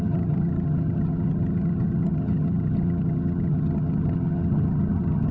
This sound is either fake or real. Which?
fake